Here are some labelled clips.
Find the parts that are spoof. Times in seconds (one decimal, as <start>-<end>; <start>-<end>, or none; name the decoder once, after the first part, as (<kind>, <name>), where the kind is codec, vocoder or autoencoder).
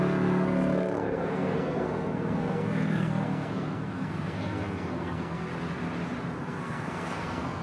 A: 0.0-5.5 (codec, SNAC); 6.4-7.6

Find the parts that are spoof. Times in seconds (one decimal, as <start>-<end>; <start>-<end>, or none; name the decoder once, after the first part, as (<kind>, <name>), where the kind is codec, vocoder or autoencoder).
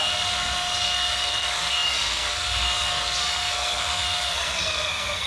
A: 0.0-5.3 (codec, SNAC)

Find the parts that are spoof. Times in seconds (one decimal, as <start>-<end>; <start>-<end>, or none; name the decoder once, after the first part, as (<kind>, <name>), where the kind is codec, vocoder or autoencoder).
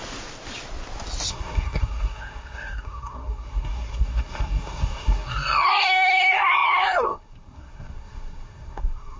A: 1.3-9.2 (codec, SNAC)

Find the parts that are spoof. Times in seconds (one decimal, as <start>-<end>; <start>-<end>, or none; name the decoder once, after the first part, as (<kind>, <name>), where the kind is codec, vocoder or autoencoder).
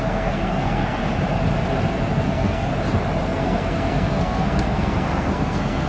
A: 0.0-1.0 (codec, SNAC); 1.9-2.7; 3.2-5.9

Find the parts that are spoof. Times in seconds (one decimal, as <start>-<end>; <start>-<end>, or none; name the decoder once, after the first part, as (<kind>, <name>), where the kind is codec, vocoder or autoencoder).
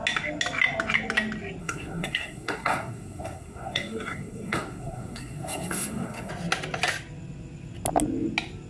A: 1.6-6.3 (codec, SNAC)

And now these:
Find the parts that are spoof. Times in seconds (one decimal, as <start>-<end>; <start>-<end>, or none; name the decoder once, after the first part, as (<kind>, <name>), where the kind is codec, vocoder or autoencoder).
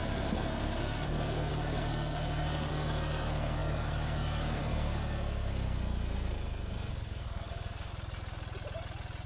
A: 0.0-7.9 (codec, SNAC)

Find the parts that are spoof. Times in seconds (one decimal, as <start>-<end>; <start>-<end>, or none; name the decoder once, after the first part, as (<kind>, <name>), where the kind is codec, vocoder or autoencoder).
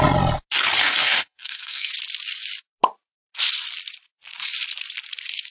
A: 0.8-1.9 (codec, SNAC)